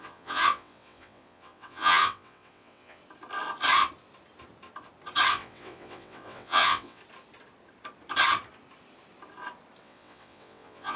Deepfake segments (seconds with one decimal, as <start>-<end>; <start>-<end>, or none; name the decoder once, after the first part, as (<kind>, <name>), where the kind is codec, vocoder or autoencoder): 0.0-3.0 (vocoder, WaveNeXt); 5.3-7.0; 9.8-11.0